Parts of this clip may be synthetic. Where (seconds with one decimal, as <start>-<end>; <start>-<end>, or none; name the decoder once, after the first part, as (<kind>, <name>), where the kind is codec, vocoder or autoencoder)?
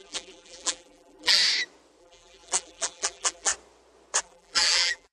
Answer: 0.0-1.4 (vocoder, BigVGAN v2); 2.0-3.5; 4.2-5.1